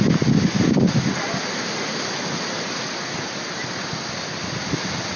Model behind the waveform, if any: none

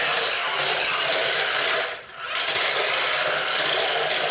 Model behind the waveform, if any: none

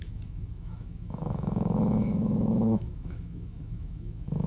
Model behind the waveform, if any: autoencoder, DAC-VAE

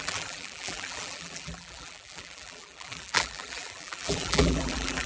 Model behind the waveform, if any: vocoder, BigVGAN v2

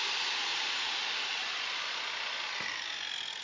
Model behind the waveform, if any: none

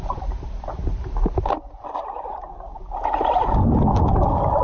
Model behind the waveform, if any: none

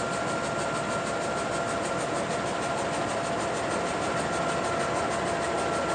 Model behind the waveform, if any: none